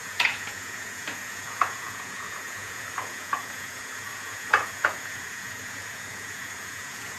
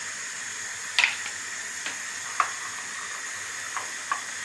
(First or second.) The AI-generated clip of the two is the first